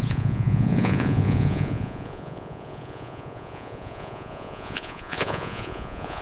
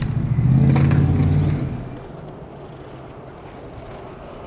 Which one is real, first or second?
second